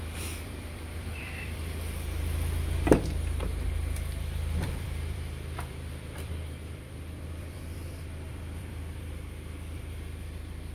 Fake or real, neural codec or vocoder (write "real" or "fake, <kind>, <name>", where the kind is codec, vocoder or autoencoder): fake, vocoder, BigVGAN v2